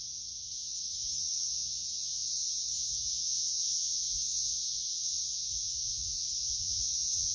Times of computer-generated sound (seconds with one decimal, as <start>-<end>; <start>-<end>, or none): 0.0-7.3